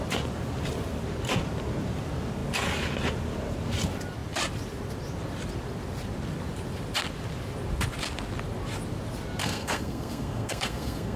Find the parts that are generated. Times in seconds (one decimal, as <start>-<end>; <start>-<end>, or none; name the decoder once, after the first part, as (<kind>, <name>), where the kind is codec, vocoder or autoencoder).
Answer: 9.4-11.2 (codec, SNAC)